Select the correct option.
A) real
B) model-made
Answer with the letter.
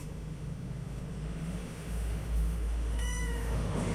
B